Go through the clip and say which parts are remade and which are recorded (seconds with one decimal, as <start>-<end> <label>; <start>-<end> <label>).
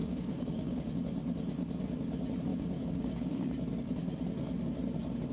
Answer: 0.0-0.9 remade; 0.9-2.5 recorded; 2.5-3.5 remade; 3.5-5.3 recorded